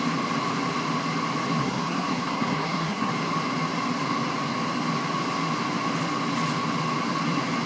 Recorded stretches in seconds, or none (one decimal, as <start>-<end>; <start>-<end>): 0.0-1.6; 3.1-7.7

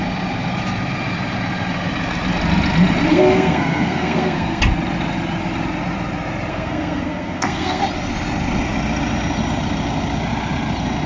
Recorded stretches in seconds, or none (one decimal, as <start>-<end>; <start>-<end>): 0.0-3.1; 4.6-6.5; 7.8-11.1